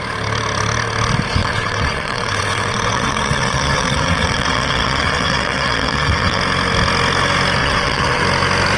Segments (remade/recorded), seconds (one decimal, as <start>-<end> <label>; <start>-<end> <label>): 0.0-1.4 recorded; 1.4-6.4 remade; 6.4-7.6 recorded; 7.6-8.2 remade; 8.2-8.8 recorded